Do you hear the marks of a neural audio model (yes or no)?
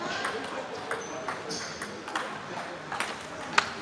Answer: no